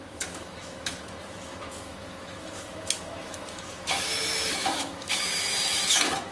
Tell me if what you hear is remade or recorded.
remade